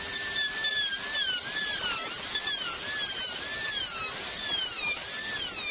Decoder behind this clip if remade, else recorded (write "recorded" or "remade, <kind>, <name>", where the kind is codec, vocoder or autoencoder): recorded